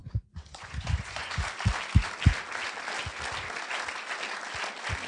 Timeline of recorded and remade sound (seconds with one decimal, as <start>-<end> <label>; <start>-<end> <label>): 0.0-1.4 remade; 1.4-5.1 recorded

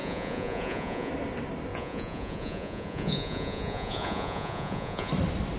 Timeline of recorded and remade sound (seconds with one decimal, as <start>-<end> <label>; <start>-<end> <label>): 0.0-1.1 remade; 1.1-1.7 recorded; 1.7-5.1 remade; 5.1-5.6 recorded

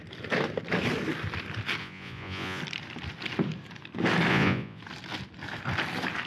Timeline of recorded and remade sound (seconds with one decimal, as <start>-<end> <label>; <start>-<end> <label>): 0.0-1.8 recorded; 1.8-2.6 remade; 2.6-4.3 recorded; 4.3-4.8 remade; 4.8-6.3 recorded

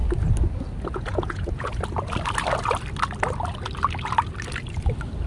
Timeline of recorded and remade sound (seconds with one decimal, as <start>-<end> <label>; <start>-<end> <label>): 0.0-0.9 recorded; 0.9-1.7 remade; 1.7-5.3 recorded

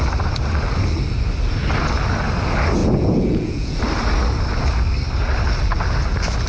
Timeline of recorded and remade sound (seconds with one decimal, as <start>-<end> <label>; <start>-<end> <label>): 0.0-2.8 recorded; 2.8-3.8 remade; 3.8-6.5 recorded

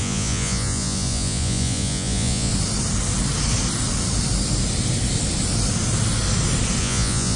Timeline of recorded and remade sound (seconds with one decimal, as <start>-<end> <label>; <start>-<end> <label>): 0.0-2.5 remade; 2.5-6.8 recorded; 6.8-7.4 remade

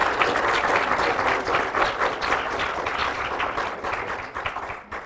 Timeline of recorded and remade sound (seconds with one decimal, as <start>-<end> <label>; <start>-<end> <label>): 0.0-5.1 recorded